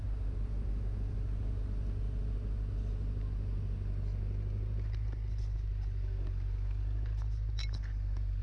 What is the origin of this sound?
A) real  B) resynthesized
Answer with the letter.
A